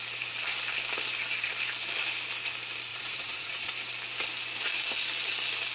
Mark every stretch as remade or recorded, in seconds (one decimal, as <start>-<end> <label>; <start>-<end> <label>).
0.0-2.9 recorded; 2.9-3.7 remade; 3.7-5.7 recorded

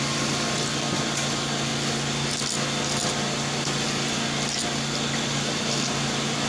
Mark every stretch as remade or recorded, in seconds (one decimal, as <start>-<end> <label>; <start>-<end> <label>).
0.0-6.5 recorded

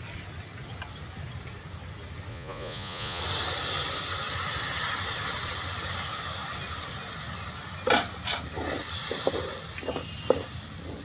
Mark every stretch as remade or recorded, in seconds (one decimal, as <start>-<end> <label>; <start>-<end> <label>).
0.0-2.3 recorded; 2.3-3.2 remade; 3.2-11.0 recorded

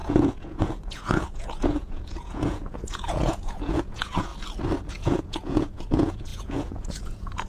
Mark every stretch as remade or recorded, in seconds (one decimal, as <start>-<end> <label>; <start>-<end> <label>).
0.0-4.3 remade; 4.3-4.9 recorded; 4.9-7.5 remade

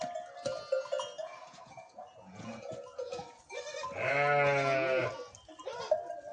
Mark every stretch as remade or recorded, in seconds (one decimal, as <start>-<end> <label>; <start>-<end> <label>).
0.0-1.2 recorded; 1.2-3.4 remade; 3.4-6.3 recorded

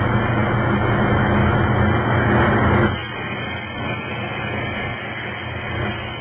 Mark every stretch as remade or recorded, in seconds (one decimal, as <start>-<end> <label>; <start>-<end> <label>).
0.0-6.2 recorded